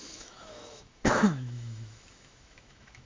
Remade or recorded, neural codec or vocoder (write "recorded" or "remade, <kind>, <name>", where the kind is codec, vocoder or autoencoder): remade, autoencoder, DAC-VAE